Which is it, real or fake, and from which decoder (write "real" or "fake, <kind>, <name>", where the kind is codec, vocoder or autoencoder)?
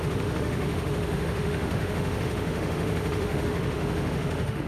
fake, autoencoder, DAC-VAE